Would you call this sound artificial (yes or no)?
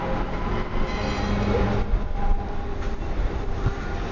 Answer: no